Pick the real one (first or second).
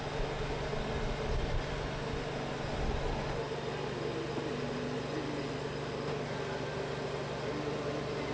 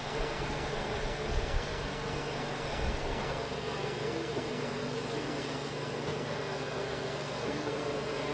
first